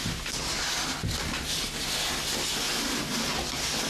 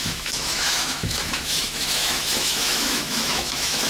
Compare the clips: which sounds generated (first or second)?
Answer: second